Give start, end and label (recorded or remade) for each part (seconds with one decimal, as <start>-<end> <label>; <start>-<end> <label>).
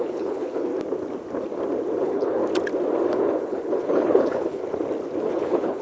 0.0-0.7 remade; 0.7-2.0 recorded; 2.0-2.4 remade; 2.4-3.1 recorded; 3.1-4.6 remade; 4.6-5.3 recorded; 5.3-5.8 remade